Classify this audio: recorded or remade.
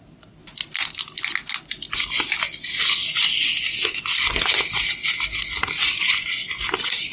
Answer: recorded